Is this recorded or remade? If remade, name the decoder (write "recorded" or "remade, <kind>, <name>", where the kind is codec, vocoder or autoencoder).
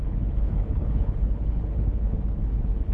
remade, codec, HILCodec